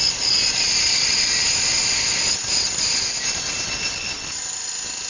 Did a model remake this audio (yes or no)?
no